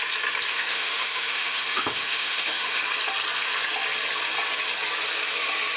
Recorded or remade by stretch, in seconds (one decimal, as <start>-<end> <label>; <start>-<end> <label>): 0.0-0.5 recorded; 0.5-2.8 remade; 2.8-5.8 recorded